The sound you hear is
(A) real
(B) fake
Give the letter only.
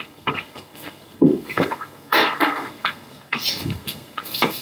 B